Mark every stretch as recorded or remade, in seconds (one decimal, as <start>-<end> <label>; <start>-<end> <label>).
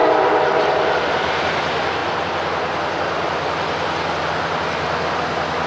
0.0-5.7 recorded